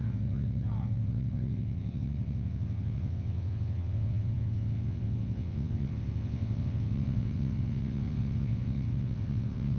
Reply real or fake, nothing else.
fake